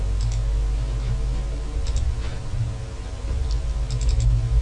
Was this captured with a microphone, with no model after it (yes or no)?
yes